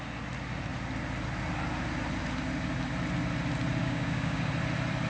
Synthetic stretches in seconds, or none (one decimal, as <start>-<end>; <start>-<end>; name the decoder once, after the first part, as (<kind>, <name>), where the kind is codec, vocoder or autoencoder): 3.8-4.5 (codec, DAC)